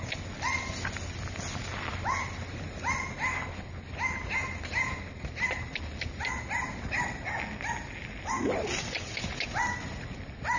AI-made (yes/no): no